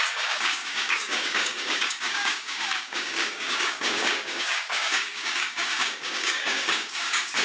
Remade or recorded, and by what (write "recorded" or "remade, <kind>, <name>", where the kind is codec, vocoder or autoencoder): remade, codec, DAC